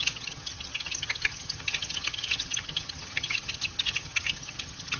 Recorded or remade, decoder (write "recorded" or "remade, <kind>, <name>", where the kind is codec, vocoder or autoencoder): remade, vocoder, HiFi-GAN